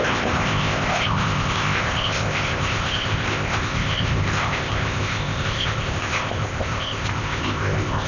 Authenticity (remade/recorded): remade